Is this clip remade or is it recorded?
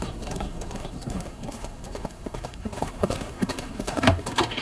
remade